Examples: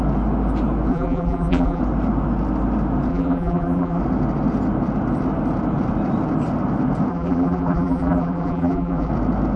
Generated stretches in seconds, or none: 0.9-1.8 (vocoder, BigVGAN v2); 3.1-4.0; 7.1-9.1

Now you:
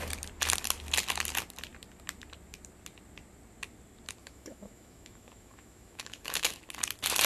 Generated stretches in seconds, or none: 4.2-6.6 (autoencoder, DAC-VAE)

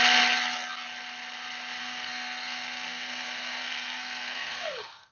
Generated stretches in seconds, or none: 1.8-5.1 (codec, SNAC)

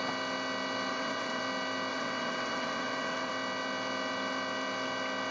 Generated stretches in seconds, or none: 0.9-1.4 (vocoder, WaveNeXt); 1.9-3.3

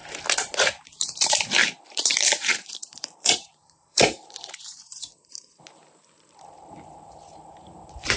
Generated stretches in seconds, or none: 0.6-8.2 (vocoder, BigVGAN v2)

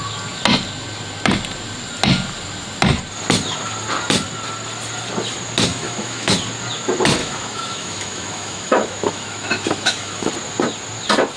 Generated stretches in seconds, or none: 5.7-6.3 (autoencoder, DAC-VAE); 7.2-10.3